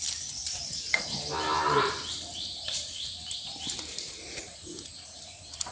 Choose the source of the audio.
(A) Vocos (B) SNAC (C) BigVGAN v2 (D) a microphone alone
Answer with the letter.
C